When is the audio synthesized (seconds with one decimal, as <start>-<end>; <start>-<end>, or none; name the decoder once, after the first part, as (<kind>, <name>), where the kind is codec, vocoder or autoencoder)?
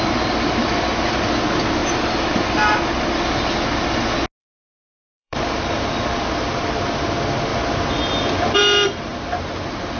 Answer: 1.8-2.8 (vocoder, BigVGAN v2); 4.4-5.5; 9.1-10.0